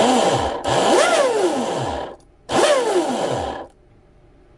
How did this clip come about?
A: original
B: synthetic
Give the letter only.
A